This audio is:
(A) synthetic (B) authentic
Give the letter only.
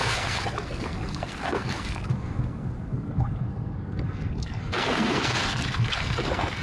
A